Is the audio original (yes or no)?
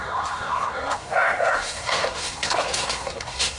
no